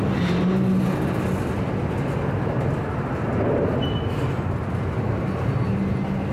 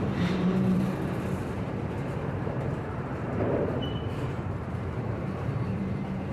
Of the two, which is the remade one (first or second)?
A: second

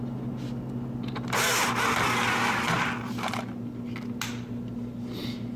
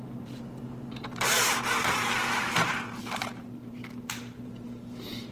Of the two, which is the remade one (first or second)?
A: second